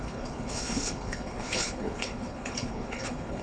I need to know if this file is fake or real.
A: fake